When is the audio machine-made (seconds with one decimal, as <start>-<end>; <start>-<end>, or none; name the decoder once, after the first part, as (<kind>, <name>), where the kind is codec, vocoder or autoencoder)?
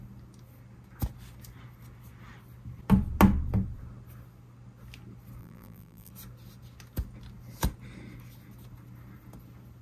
5.4-6.1 (vocoder, BigVGAN v2)